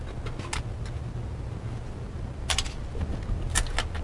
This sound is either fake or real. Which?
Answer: real